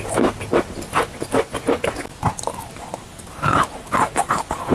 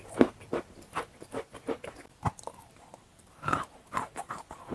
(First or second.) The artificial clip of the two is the second